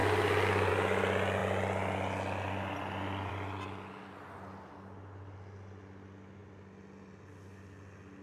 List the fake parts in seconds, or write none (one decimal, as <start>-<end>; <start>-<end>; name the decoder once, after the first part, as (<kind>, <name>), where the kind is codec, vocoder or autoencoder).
none